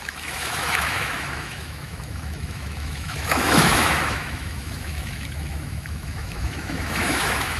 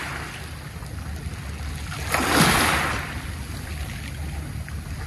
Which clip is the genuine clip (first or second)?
second